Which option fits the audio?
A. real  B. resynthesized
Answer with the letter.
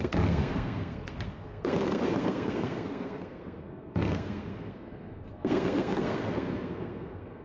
B